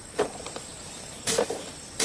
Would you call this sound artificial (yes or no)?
no